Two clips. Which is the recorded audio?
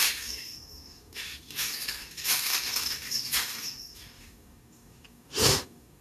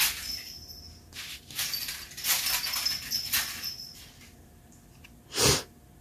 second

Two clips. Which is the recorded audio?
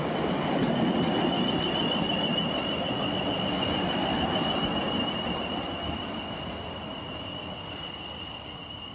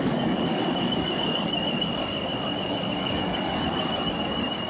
first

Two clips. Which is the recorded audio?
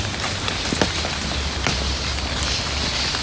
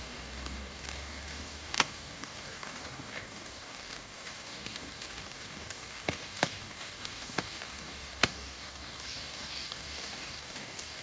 first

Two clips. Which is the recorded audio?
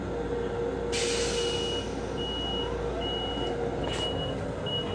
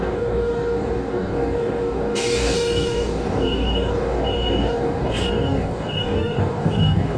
first